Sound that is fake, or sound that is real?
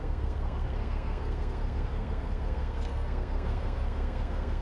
fake